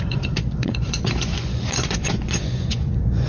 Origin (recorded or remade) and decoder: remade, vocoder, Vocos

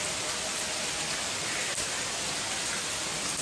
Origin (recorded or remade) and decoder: recorded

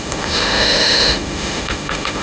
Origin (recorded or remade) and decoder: remade, autoencoder, DAC-VAE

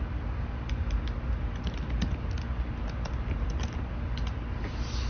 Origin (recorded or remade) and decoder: recorded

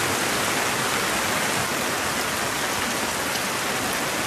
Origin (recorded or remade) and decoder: recorded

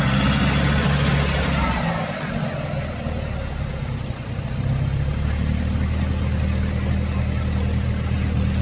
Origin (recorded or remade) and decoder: recorded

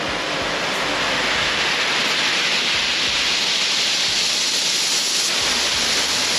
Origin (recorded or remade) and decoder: recorded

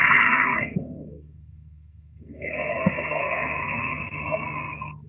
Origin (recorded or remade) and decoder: remade, codec, SNAC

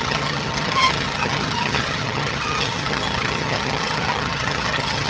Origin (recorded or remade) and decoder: remade, vocoder, HiFi-GAN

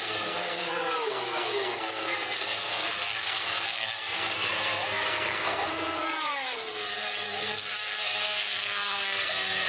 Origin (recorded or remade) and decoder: remade, codec, SNAC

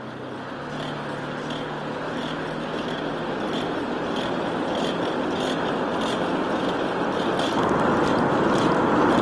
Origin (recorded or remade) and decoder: recorded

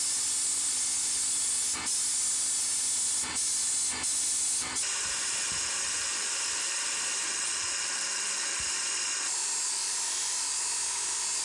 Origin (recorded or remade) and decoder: recorded